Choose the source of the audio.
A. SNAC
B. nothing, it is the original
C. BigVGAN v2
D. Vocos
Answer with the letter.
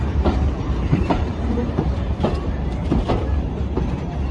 C